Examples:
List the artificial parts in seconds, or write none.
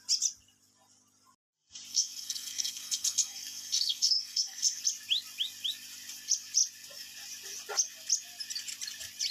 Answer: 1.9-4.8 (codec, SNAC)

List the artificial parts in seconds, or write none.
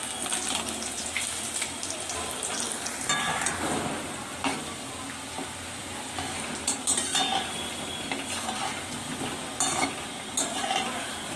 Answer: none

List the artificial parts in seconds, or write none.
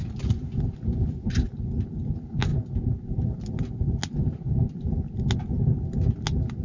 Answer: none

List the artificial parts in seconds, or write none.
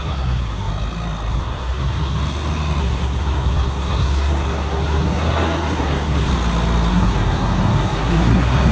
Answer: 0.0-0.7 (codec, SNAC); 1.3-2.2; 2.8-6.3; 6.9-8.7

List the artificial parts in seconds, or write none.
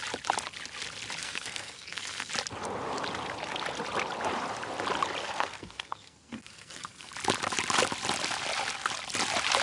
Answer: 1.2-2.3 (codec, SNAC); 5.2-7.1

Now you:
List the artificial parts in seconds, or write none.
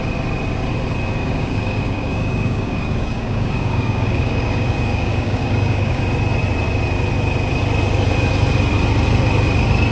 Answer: 1.2-6.0 (codec, DAC)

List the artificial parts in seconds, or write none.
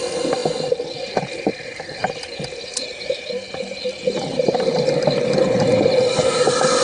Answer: none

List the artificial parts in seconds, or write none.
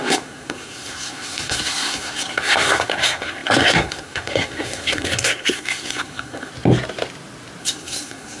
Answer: 0.0-6.5 (codec, SNAC); 7.6-8.4